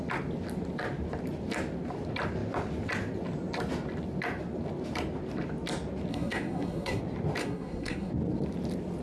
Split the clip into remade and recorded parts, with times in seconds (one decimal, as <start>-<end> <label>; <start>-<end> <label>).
0.0-6.1 recorded; 6.1-7.0 remade; 7.0-7.4 recorded; 7.4-8.1 remade; 8.1-9.0 recorded